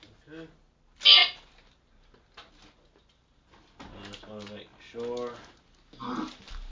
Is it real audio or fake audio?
real